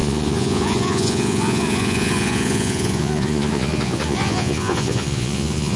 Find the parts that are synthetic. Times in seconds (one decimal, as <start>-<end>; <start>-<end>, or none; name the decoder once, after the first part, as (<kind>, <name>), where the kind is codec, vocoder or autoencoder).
0.0-5.8 (vocoder, Vocos)